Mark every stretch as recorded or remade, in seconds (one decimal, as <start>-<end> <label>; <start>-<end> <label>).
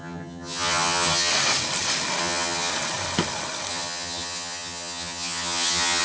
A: 0.0-1.3 remade; 1.3-2.2 recorded; 2.2-2.7 remade; 2.7-3.7 recorded; 3.7-6.0 remade